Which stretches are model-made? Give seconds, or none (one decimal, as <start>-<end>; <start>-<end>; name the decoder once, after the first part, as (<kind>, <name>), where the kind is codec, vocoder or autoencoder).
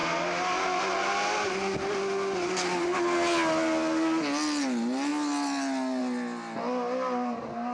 none